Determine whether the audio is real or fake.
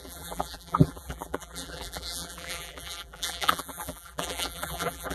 fake